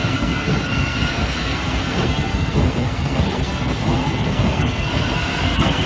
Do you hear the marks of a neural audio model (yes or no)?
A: yes